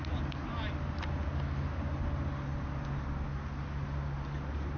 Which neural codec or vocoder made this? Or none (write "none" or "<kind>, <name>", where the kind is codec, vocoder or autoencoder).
none